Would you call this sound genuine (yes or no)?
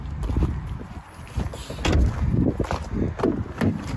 yes